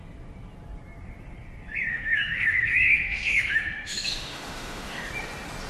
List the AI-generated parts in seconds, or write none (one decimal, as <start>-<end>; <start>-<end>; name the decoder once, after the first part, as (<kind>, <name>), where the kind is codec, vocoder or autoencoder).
1.9-5.1 (autoencoder, DAC-VAE)